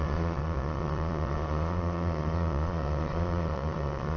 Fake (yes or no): yes